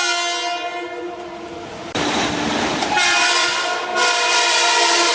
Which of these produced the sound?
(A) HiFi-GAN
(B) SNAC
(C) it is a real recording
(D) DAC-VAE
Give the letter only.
C